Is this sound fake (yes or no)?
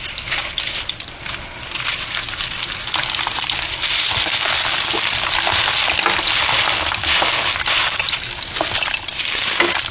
no